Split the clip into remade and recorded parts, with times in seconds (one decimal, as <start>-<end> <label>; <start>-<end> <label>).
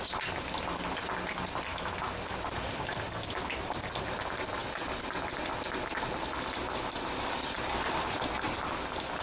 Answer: 0.0-1.7 recorded; 1.7-2.2 remade; 2.2-9.2 recorded